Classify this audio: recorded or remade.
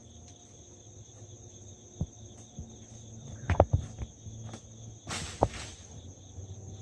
recorded